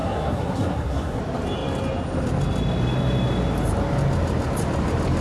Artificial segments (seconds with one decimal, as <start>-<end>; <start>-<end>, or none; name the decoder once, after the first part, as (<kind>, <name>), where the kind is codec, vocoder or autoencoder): 0.0-1.2 (codec, SNAC)